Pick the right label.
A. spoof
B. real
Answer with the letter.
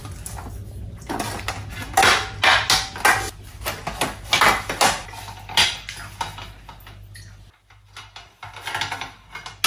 B